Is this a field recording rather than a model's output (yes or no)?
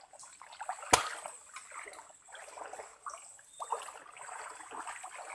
yes